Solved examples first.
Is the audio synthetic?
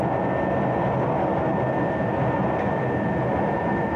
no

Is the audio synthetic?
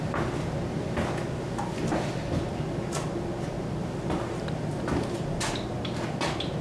no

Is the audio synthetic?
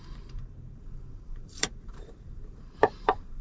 yes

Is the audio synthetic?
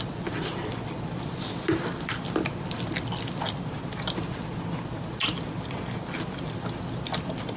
no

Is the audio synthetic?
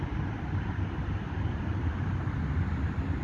yes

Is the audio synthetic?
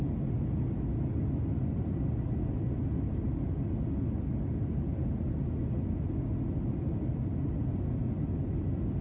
no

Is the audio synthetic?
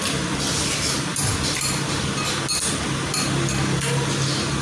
no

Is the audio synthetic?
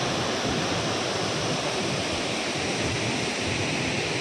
no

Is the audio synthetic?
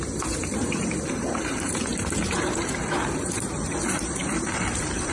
yes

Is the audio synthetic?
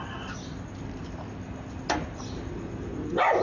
no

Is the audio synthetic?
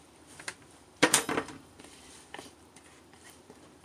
yes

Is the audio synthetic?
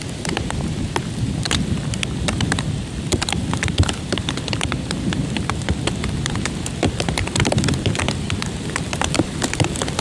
yes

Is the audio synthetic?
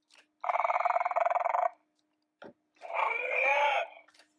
no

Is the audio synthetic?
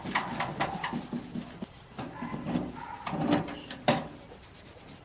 no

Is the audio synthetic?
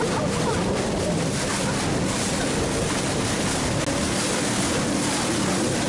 no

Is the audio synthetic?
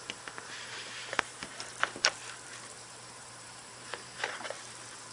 yes